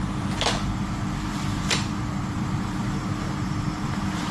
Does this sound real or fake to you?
fake